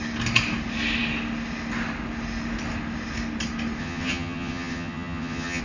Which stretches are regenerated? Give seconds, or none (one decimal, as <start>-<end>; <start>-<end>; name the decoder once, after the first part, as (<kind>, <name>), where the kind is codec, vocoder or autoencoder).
3.8-5.6 (vocoder, HiFi-GAN)